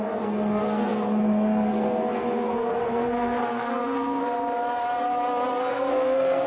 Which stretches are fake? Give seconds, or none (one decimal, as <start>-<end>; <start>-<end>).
0.0-4.2; 5.5-6.5